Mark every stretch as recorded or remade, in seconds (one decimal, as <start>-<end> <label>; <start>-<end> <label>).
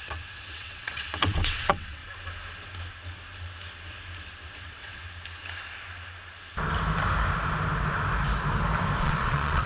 0.0-2.0 remade; 2.0-4.5 recorded; 4.5-5.0 remade; 5.0-9.0 recorded; 9.0-9.7 remade